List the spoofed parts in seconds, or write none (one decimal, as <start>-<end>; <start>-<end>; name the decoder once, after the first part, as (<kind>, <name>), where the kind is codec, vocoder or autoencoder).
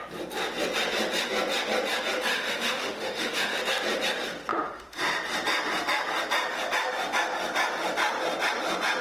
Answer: 2.3-3.6 (autoencoder, DAC-VAE); 4.5-5.0